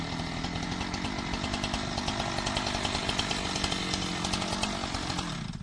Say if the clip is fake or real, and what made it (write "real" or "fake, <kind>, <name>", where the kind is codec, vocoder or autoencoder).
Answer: real